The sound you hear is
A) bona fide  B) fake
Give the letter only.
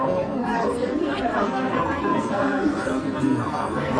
B